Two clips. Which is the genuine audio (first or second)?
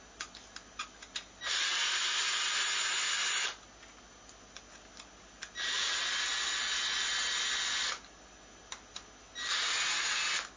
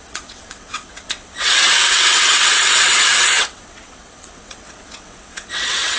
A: first